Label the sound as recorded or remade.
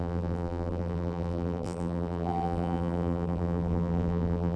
remade